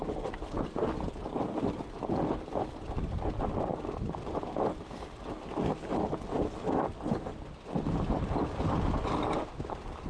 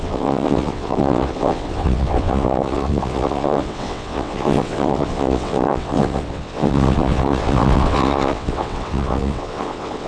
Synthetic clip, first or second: second